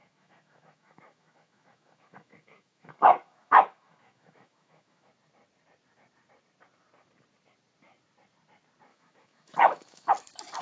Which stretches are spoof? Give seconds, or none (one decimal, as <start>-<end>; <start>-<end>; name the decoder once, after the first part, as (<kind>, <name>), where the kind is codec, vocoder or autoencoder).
0.0-5.1 (autoencoder, DAC-VAE); 8.9-10.1